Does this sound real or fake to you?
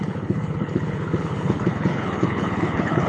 fake